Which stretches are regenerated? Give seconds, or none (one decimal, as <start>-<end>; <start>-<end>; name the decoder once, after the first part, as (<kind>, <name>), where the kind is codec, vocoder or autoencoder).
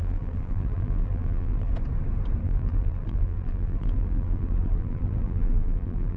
0.0-1.7 (vocoder, BigVGAN v2); 2.4-6.2